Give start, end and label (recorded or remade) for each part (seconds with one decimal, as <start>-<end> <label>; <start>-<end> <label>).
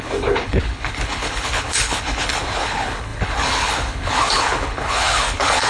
0.0-5.7 remade